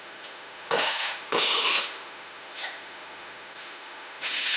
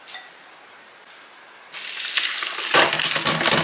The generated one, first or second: first